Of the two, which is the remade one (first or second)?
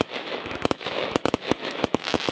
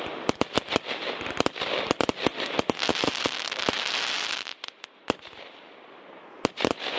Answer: first